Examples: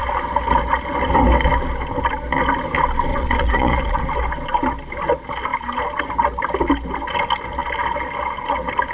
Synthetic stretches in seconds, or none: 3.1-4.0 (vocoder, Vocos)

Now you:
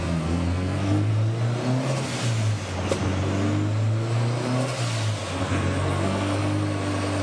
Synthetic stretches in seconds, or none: 0.0-1.1 (codec, SNAC); 5.4-6.4

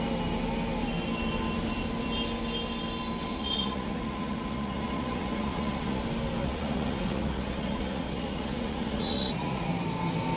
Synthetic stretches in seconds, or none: 3.3-6.0 (vocoder, Vocos); 6.4-9.7